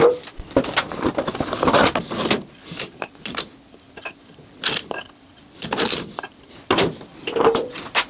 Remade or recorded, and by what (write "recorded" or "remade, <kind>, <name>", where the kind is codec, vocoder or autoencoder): recorded